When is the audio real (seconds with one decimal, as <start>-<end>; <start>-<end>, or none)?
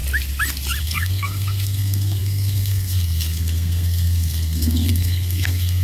0.0-0.8